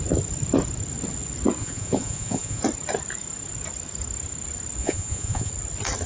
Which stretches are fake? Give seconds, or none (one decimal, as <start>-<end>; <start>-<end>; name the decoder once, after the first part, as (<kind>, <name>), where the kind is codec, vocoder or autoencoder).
1.6-2.6 (vocoder, Vocos); 4.8-5.5